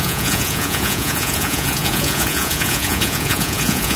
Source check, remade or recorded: remade